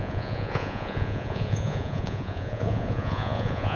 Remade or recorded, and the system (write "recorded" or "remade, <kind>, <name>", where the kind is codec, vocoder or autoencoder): remade, vocoder, Vocos